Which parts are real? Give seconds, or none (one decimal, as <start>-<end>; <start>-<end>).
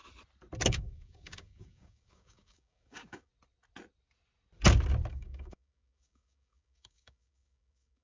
0.0-0.7; 3.3-5.1